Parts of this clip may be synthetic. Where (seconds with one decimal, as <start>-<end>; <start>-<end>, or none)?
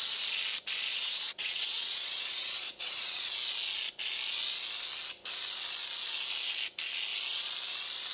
0.9-3.3